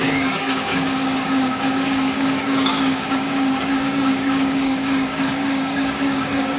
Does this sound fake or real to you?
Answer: fake